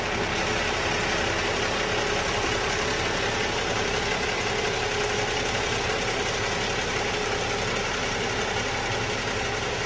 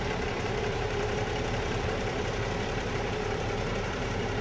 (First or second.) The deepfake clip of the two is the second